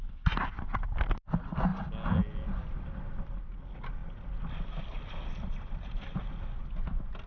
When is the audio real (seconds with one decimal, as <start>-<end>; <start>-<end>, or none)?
0.0-7.3